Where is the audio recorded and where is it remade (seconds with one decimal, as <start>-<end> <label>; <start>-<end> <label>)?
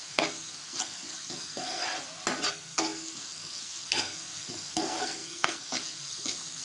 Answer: 0.0-1.8 remade; 1.8-2.5 recorded; 2.5-6.6 remade